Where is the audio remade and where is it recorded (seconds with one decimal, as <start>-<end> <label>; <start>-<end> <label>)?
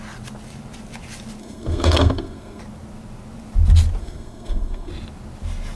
0.0-1.4 recorded; 1.4-2.6 remade; 2.6-4.0 recorded; 4.0-4.9 remade; 4.9-5.8 recorded